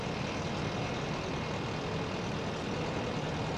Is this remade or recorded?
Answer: recorded